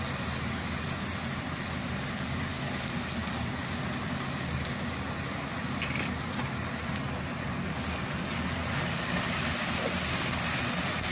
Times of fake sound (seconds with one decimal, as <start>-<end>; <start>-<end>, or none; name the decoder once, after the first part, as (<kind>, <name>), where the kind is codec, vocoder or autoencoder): none